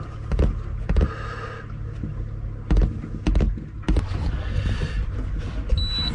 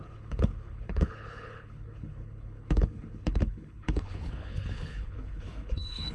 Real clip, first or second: first